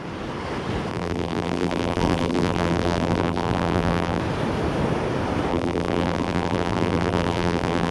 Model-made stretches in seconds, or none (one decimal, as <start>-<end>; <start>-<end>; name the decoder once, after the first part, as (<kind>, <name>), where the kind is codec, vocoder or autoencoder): 0.9-4.2 (vocoder, BigVGAN v2); 5.5-7.9